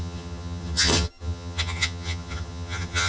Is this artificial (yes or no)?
yes